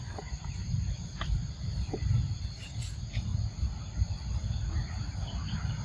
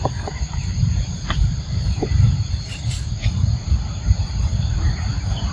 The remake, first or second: second